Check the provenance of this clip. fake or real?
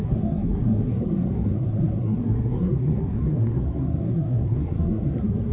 fake